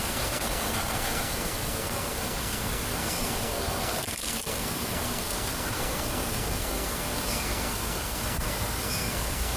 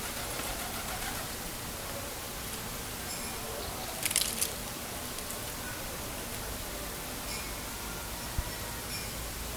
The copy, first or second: first